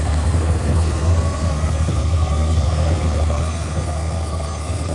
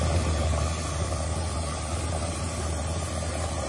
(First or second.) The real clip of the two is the second